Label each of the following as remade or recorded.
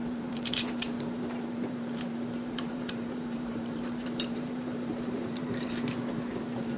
remade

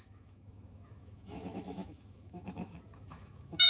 remade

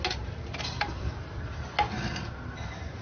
recorded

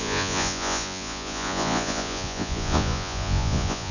remade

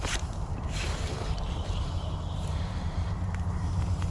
remade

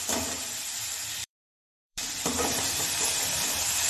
remade